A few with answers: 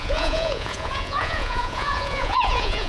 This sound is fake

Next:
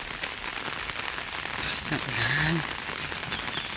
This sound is real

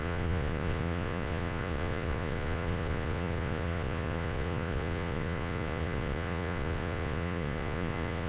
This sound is fake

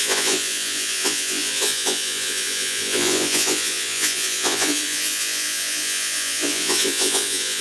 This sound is fake